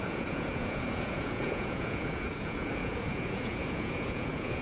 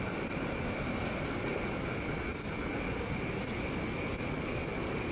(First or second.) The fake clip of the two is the first